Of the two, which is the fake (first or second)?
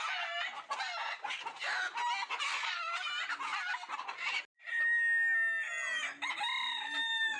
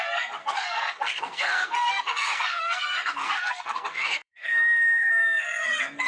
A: second